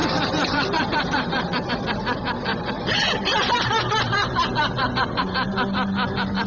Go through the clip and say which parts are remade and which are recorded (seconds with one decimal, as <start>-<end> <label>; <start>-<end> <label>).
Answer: 0.0-1.7 remade; 1.7-2.5 recorded; 2.5-5.2 remade; 5.2-6.5 recorded